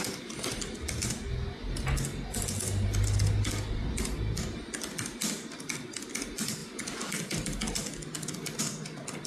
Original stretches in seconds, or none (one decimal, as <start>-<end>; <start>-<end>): 0.0-9.3